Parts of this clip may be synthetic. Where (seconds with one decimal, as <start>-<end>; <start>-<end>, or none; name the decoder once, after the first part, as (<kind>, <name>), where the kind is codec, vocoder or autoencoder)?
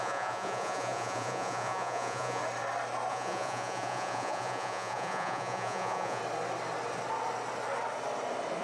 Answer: 0.0-2.4 (vocoder, Vocos); 3.1-6.2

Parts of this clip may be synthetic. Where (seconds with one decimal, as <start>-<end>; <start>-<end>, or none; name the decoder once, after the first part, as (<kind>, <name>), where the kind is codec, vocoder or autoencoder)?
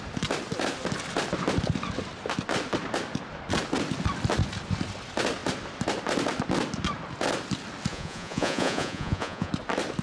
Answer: 7.9-9.5 (vocoder, Vocos)